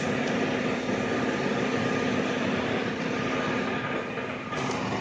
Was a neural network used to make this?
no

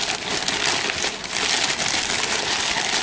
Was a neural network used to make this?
no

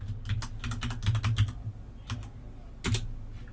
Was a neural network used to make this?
no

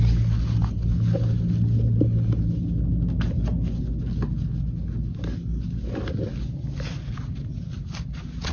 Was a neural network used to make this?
no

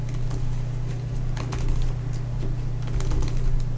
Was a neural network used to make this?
no